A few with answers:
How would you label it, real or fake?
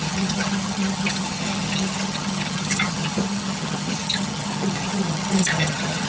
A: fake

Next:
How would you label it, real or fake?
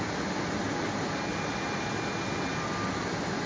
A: real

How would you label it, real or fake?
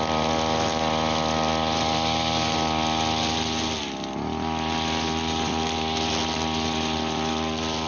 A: real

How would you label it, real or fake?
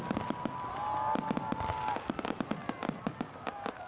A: real